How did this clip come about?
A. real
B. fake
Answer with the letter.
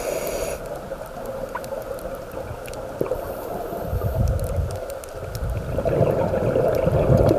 A